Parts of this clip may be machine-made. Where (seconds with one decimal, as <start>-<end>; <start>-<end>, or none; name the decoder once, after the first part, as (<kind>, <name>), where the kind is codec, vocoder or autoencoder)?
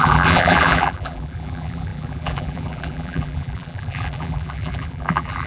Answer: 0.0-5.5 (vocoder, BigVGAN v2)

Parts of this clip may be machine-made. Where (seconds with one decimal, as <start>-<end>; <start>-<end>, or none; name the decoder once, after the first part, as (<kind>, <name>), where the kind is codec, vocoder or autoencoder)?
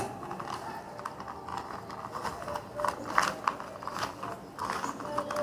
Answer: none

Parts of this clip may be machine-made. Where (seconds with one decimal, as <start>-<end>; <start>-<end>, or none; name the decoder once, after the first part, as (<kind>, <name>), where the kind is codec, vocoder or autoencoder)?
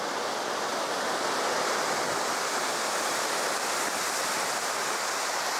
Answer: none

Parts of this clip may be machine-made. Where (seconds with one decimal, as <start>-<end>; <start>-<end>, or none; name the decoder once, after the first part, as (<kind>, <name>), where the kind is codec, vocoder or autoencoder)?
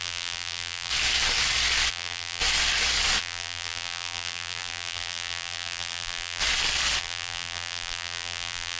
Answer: 0.0-0.9 (vocoder, BigVGAN v2); 1.9-2.4; 3.2-6.4; 7.0-8.8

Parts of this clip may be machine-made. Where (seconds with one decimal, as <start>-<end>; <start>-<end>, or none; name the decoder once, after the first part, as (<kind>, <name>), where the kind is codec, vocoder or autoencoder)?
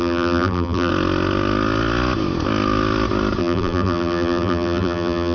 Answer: 0.0-0.9 (vocoder, BigVGAN v2); 3.4-5.3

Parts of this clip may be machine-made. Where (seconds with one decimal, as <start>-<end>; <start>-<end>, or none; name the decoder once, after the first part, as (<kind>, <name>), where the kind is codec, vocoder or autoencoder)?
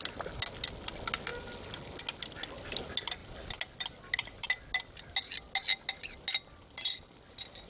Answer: none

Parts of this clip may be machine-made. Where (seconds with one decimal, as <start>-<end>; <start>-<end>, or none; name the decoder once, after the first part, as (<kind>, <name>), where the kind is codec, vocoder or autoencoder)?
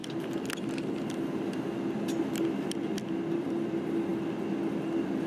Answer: 3.2-4.1 (vocoder, BigVGAN v2); 4.7-5.3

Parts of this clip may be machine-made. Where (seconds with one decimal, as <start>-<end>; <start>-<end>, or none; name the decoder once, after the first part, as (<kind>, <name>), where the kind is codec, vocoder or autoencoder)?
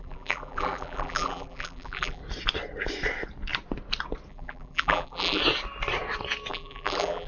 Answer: 0.0-2.2 (vocoder, BigVGAN v2); 4.3-5.4; 6.5-7.3